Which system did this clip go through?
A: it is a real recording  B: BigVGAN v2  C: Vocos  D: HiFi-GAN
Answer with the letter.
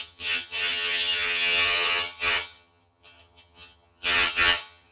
D